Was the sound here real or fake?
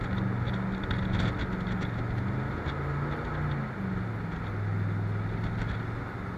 real